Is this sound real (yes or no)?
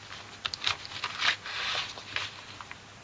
yes